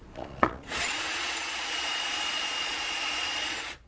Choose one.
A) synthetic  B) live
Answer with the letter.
A